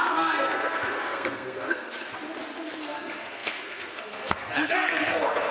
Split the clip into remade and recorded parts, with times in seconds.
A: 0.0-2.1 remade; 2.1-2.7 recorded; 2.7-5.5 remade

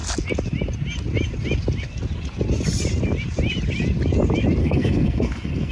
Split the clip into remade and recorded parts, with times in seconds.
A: 0.0-4.6 recorded; 4.6-5.7 remade